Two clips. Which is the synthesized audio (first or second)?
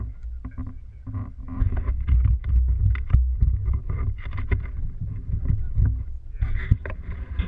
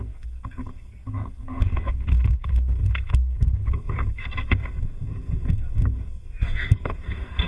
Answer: second